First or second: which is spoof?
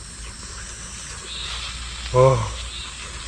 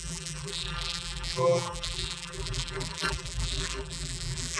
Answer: second